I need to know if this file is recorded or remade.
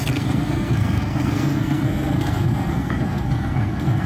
remade